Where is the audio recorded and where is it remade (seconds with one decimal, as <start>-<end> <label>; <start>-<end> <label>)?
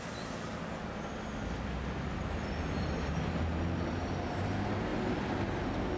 0.0-6.0 recorded